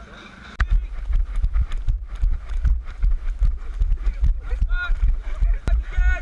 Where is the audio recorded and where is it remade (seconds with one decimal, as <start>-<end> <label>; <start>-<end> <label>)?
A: 0.0-1.6 recorded; 1.6-3.1 remade; 3.1-4.3 recorded; 4.3-5.0 remade; 5.0-6.2 recorded